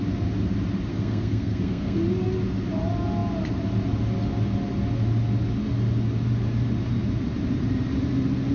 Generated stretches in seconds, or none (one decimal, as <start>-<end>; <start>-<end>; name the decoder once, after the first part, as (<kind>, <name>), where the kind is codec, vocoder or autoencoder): 0.9-2.0 (codec, SNAC)